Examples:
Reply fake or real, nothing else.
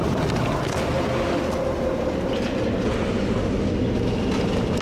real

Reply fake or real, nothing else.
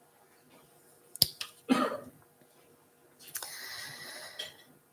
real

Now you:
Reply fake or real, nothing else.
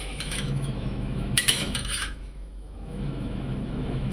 fake